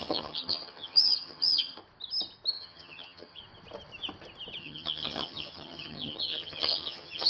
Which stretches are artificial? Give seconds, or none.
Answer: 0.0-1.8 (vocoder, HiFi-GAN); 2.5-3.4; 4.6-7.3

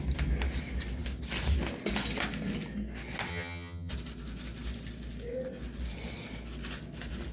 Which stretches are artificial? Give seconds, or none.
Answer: 3.3-3.9 (vocoder, HiFi-GAN)